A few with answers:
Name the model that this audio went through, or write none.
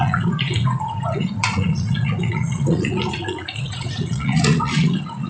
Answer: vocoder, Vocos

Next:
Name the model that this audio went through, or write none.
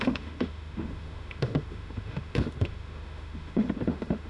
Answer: autoencoder, DAC-VAE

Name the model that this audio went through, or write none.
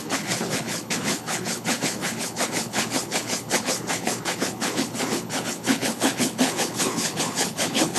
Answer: codec, HILCodec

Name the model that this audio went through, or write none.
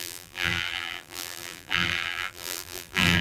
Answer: vocoder, BigVGAN v2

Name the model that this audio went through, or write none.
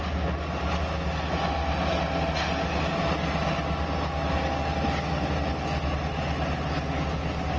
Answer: none